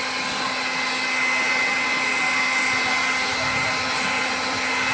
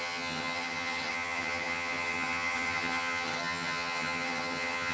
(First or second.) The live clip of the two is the first